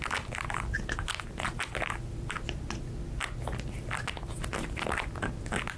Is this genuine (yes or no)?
yes